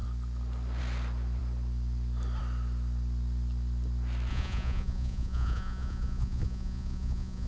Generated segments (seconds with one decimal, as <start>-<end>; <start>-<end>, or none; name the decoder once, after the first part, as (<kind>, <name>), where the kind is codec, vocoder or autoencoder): 4.3-7.5 (vocoder, Vocos)